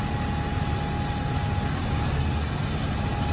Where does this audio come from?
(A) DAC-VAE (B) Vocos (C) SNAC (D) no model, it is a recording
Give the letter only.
D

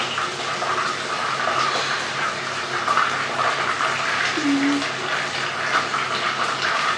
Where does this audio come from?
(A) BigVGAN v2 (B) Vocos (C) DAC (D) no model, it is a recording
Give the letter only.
D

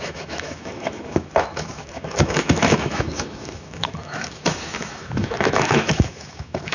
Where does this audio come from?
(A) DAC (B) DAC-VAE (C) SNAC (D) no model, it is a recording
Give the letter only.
B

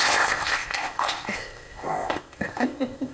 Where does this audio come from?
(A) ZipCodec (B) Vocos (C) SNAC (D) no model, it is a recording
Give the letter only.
A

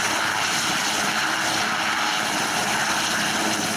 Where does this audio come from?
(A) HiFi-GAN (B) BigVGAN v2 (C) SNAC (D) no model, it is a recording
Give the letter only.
B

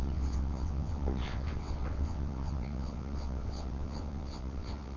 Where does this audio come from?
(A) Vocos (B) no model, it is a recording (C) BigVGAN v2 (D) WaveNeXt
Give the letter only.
D